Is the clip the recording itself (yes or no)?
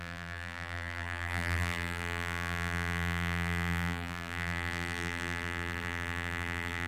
no